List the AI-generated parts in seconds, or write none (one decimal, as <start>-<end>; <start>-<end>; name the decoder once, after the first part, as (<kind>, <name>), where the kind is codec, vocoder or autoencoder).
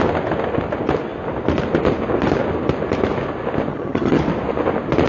3.7-4.2 (vocoder, HiFi-GAN)